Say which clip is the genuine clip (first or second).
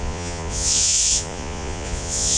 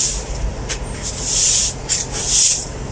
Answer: second